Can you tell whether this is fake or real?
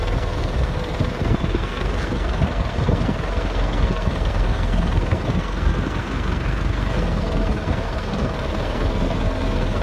fake